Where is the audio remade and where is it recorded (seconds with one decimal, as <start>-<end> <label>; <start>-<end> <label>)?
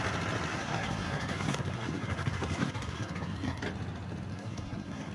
0.0-0.5 recorded; 0.5-3.6 remade; 3.6-4.3 recorded; 4.3-5.1 remade